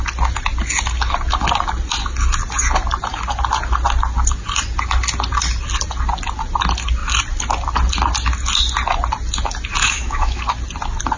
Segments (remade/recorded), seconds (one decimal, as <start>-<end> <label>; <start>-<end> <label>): 0.0-9.8 recorded; 9.8-10.4 remade; 10.4-11.2 recorded